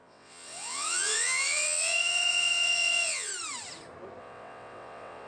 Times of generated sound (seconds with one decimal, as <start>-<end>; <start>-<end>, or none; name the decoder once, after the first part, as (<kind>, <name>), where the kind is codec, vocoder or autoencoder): 0.0-3.3 (vocoder, WaveNeXt); 4.2-5.3